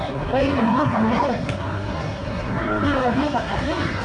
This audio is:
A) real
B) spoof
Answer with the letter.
B